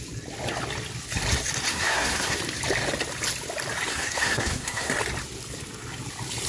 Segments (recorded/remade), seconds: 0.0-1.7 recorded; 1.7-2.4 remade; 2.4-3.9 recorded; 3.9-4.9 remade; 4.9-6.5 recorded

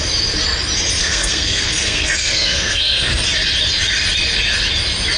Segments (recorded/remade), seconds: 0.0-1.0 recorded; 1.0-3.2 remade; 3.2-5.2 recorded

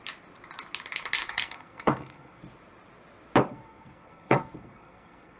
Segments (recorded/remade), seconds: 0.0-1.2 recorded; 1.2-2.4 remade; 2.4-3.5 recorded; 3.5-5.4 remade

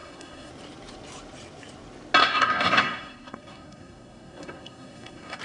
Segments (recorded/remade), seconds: 0.0-0.5 remade; 0.5-2.2 recorded; 2.2-5.4 remade

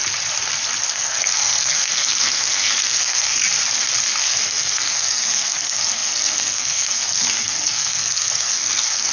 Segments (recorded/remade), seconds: 0.0-0.9 recorded; 0.9-3.4 remade; 3.4-4.2 recorded; 4.2-9.1 remade

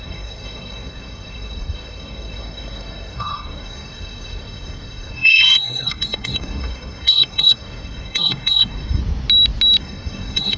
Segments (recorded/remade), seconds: 0.0-9.0 remade; 9.0-9.8 recorded; 9.8-10.6 remade

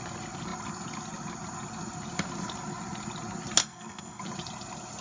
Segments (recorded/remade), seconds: 0.0-3.6 recorded; 3.6-4.2 remade; 4.2-5.0 recorded

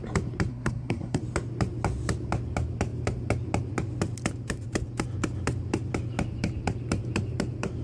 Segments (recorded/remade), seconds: 0.0-0.5 recorded; 0.5-1.2 remade; 1.2-7.8 recorded